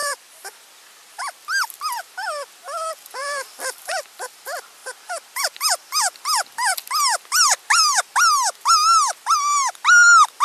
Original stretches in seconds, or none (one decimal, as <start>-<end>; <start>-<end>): 0.5-3.2; 3.9-10.4